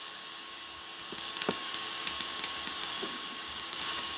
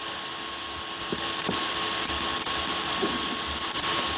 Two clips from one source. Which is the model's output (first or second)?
first